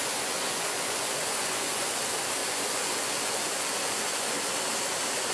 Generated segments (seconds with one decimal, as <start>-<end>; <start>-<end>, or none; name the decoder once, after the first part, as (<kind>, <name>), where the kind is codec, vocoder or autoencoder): 0.0-2.0 (vocoder, Vocos); 2.4-4.4